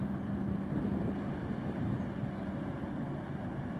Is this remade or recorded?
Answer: recorded